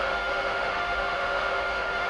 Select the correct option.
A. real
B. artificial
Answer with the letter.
B